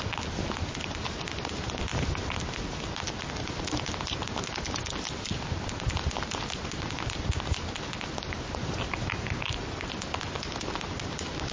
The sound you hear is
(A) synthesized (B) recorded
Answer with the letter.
B